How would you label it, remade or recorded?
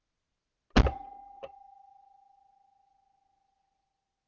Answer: recorded